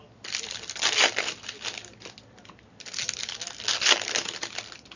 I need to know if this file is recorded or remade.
recorded